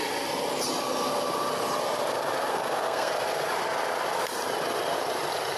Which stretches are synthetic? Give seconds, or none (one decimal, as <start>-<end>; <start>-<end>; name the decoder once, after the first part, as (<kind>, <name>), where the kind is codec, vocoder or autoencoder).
2.5-3.1 (codec, SNAC)